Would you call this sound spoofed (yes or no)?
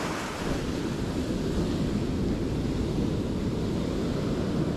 no